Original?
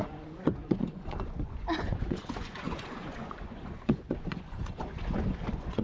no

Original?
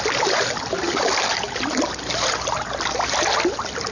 yes